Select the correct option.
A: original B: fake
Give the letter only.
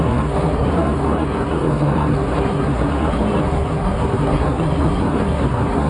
B